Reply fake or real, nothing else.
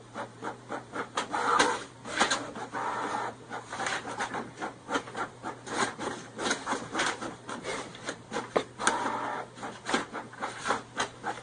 fake